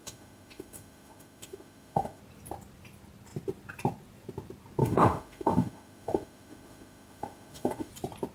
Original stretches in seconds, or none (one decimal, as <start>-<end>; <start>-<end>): 2.2-4.8; 7.9-8.3